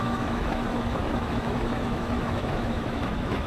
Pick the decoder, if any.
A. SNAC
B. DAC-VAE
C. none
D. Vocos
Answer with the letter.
B